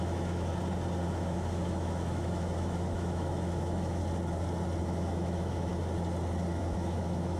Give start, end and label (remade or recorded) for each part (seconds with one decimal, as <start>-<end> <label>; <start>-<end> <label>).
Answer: 0.0-0.5 remade; 0.5-1.1 recorded; 1.1-4.0 remade; 4.0-4.8 recorded; 4.8-5.7 remade; 5.7-6.6 recorded; 6.6-7.4 remade